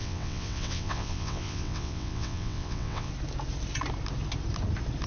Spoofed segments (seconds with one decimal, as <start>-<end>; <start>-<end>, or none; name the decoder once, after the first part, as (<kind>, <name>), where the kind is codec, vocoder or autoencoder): 0.0-3.1 (vocoder, WaveNeXt)